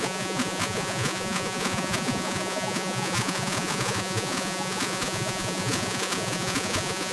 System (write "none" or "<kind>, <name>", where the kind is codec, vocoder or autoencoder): vocoder, Vocos